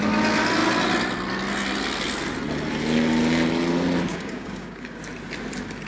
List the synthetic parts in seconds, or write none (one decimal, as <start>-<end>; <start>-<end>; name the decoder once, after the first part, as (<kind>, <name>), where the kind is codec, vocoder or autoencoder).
4.1-5.0 (codec, DAC)